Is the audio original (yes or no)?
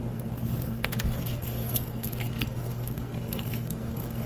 no